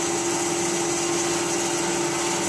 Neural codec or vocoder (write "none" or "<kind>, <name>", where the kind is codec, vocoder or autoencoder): none